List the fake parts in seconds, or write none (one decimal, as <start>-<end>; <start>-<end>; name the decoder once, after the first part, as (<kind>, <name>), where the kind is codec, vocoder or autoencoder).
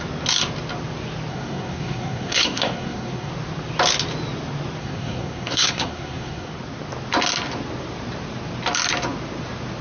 1.3-3.3 (codec, SNAC); 4.8-6.5